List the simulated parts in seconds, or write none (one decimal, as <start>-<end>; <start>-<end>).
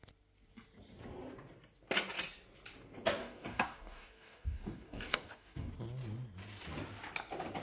3.2-5.7